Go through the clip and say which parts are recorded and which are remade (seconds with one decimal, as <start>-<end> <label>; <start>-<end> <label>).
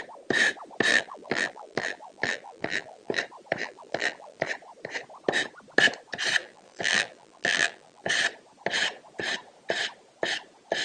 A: 0.0-0.9 recorded; 0.9-3.2 remade; 3.2-3.6 recorded; 3.6-4.5 remade; 4.5-6.4 recorded; 6.4-8.1 remade; 8.1-10.8 recorded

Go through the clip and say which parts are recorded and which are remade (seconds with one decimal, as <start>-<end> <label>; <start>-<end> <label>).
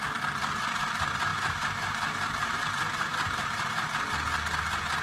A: 0.0-1.3 recorded; 1.3-3.9 remade; 3.9-5.0 recorded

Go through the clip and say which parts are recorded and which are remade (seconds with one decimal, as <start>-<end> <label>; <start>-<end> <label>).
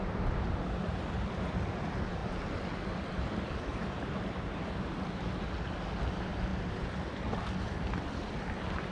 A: 0.0-3.7 recorded; 3.7-5.2 remade; 5.2-6.5 recorded; 6.5-7.1 remade; 7.1-8.9 recorded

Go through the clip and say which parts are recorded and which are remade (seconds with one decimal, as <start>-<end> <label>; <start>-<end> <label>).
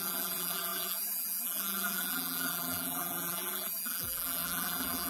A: 0.0-5.1 remade